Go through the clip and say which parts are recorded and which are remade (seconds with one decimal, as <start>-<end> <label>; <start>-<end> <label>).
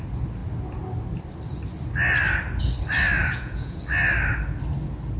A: 0.0-3.2 recorded; 3.2-3.8 remade; 3.8-5.2 recorded